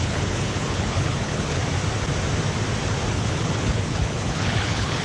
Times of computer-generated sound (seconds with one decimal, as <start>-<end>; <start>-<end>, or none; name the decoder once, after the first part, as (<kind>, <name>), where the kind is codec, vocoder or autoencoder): 0.0-1.6 (codec, HILCodec); 3.1-5.0